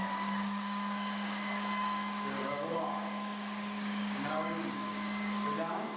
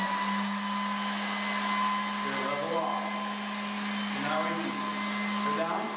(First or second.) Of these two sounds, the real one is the second